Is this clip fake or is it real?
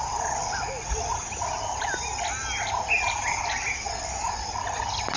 real